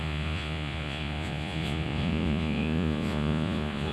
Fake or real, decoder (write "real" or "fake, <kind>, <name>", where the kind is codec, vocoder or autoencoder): fake, vocoder, Vocos